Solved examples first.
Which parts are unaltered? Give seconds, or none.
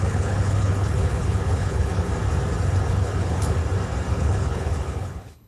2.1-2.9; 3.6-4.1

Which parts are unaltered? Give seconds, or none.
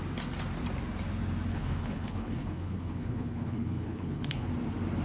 0.0-1.5; 4.5-5.0